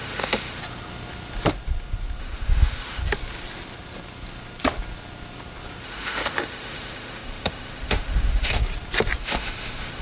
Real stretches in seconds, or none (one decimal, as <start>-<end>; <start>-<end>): 0.6-2.2; 3.0-5.8; 8.6-9.2